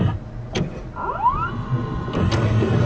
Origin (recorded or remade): recorded